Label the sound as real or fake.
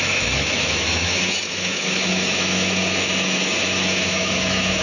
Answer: fake